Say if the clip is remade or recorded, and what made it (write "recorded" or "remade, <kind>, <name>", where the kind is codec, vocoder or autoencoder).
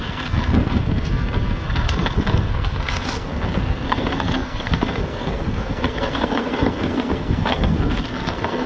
remade, codec, SNAC